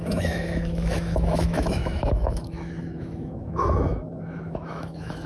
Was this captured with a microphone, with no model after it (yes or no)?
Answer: no